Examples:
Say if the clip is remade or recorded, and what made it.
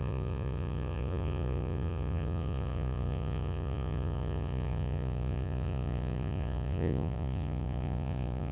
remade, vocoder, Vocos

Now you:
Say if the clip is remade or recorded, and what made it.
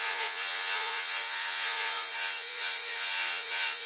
remade, vocoder, Vocos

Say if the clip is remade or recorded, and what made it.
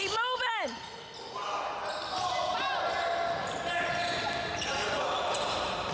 recorded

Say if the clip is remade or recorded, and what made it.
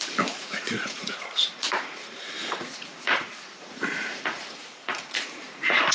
remade, vocoder, Vocos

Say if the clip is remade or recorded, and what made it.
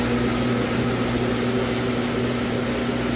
recorded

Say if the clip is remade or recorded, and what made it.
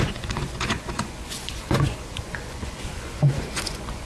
remade, vocoder, Vocos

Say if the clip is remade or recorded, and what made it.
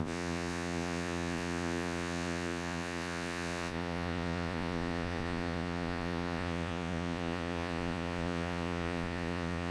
remade, vocoder, Vocos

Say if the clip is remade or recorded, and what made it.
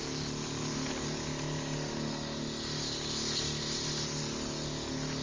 recorded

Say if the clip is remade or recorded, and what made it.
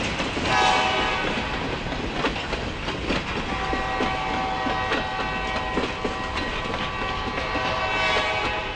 recorded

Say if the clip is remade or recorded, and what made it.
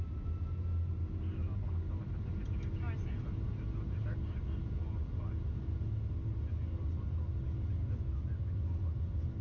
recorded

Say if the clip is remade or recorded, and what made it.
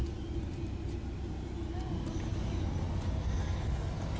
recorded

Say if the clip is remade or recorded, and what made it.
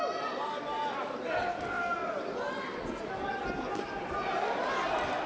recorded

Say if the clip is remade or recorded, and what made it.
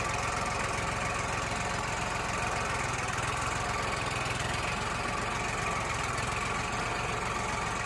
recorded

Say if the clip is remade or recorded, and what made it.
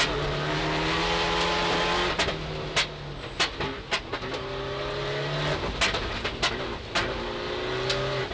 recorded